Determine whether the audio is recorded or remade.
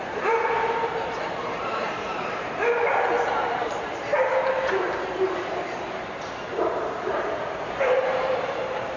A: remade